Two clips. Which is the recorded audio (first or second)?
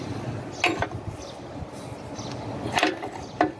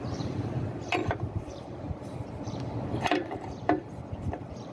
first